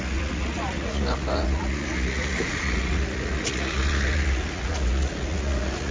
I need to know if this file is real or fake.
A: fake